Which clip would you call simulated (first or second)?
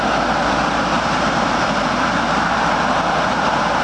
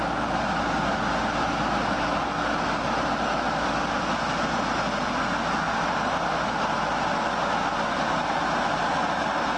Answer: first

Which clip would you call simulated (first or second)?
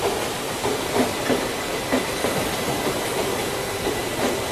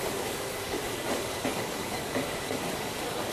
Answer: second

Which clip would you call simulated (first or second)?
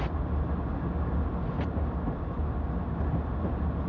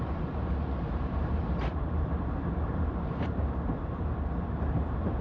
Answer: second